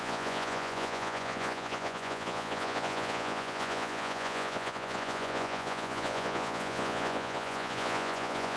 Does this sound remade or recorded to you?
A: remade